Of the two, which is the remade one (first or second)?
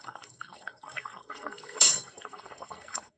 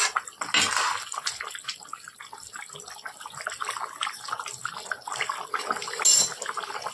first